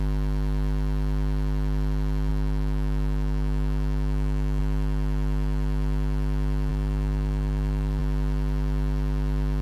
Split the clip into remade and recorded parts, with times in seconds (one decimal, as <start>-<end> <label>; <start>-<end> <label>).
0.0-2.3 recorded; 2.3-4.6 remade; 4.6-6.7 recorded; 6.7-8.0 remade; 8.0-9.6 recorded